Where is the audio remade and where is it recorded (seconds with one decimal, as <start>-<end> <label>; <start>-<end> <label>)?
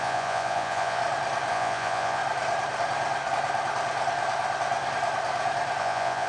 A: 0.0-1.0 remade; 1.0-1.5 recorded; 1.5-2.2 remade; 2.2-5.8 recorded; 5.8-6.3 remade